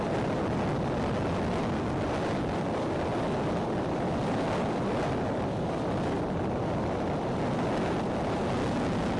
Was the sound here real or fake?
real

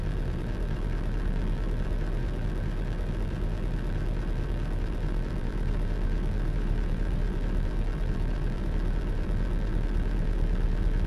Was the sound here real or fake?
fake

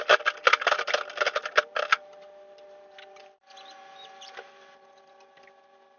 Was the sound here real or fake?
fake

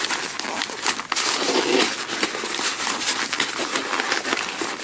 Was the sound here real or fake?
real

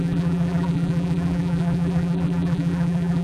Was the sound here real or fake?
fake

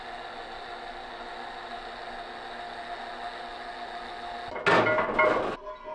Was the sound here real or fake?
real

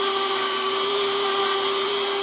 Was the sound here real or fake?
fake